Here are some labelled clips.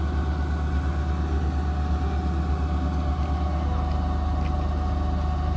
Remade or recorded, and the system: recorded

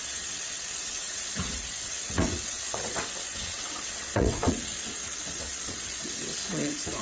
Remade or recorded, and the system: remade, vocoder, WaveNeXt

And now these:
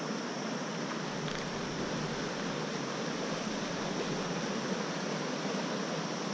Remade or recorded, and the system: recorded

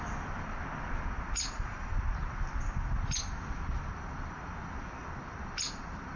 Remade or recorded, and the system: recorded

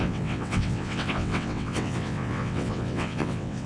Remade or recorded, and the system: remade, vocoder, WaveNeXt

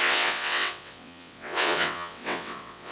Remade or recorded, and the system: remade, vocoder, WaveNeXt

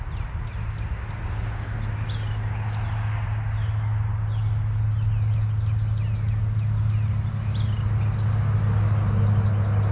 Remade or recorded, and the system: recorded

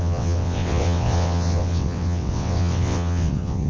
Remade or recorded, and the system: remade, vocoder, WaveNeXt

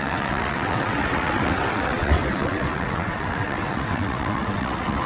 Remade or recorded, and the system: remade, vocoder, WaveNeXt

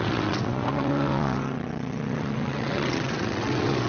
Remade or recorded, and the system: remade, vocoder, WaveNeXt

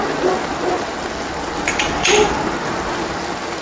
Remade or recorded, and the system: recorded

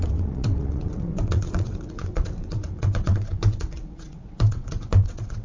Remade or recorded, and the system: remade, vocoder, WaveNeXt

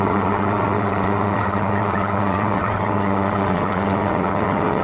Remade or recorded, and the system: remade, vocoder, WaveNeXt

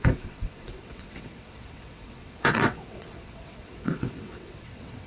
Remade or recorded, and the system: remade, vocoder, WaveNeXt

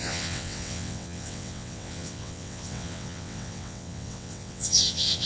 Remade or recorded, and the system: remade, vocoder, WaveNeXt